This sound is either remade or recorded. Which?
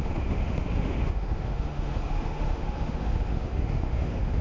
remade